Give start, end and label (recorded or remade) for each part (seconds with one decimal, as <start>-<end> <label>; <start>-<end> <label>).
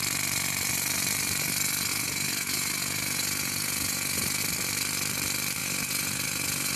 0.0-1.9 recorded; 1.9-4.4 remade; 4.4-5.6 recorded; 5.6-6.8 remade